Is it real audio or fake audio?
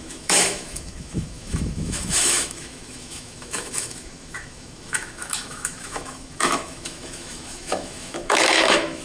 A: fake